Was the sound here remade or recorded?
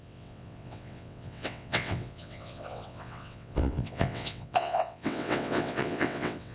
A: remade